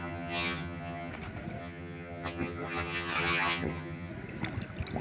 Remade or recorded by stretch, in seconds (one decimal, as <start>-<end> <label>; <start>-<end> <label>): 0.0-1.1 remade; 1.1-1.6 recorded; 1.6-4.1 remade; 4.1-5.0 recorded